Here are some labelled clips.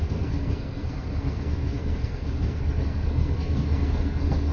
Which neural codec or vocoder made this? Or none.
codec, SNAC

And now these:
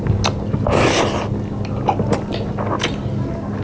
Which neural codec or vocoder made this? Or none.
none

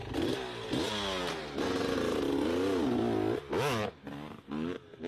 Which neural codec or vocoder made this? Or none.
none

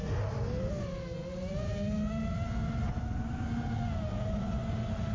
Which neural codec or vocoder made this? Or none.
none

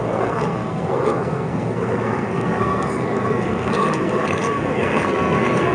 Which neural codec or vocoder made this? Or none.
codec, SNAC